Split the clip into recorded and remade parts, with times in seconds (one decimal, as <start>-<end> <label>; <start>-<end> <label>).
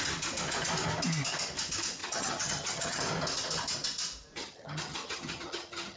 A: 0.0-2.0 recorded; 2.0-3.0 remade; 3.0-4.4 recorded; 4.4-6.0 remade